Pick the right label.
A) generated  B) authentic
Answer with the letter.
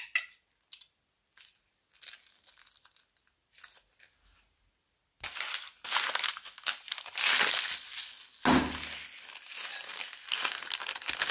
B